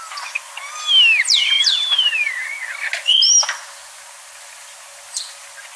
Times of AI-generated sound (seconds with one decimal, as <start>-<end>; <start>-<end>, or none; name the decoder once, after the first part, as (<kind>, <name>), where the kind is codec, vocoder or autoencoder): 1.2-1.9 (vocoder, BigVGAN v2)